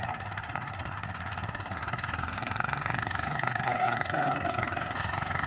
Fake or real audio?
fake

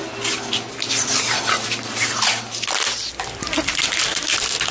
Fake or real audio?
real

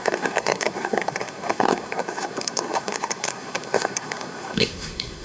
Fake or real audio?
fake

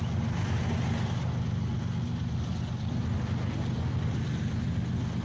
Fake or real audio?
real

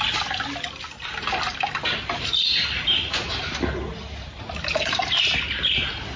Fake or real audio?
real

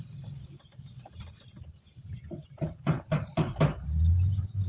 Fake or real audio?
real